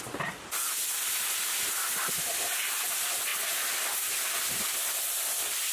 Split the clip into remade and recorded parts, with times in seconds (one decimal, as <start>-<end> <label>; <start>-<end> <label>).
0.0-0.8 remade; 0.8-2.3 recorded; 2.3-3.3 remade; 3.3-4.4 recorded; 4.4-5.7 remade